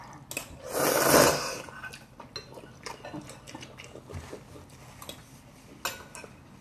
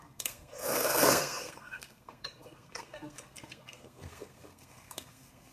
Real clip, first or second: first